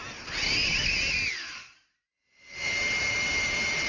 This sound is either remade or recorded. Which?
recorded